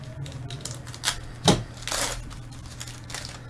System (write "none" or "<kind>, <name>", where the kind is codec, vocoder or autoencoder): none